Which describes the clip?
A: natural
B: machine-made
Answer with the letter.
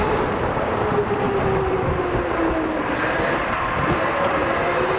A